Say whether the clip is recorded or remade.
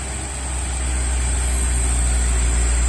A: recorded